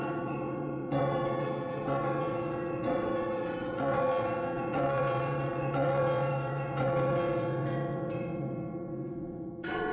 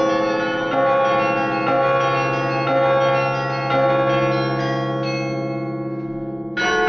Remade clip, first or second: first